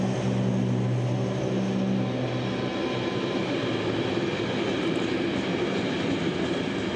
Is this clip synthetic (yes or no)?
no